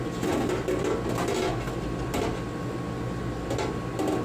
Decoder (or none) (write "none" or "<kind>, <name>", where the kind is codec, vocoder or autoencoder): none